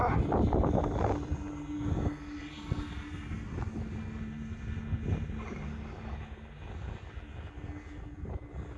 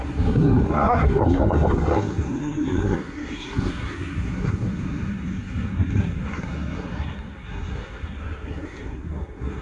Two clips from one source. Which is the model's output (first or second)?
second